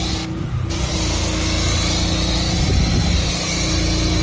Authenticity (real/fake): real